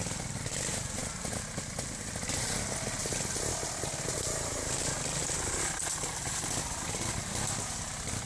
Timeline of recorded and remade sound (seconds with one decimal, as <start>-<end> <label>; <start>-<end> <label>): 0.0-8.3 recorded